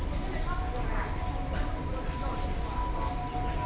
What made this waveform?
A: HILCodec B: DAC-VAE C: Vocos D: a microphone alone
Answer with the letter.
D